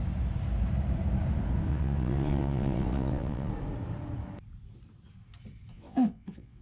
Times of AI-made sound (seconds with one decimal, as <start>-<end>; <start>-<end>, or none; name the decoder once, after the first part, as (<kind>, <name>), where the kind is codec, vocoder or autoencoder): 1.7-3.5 (vocoder, WaveNeXt); 5.7-6.6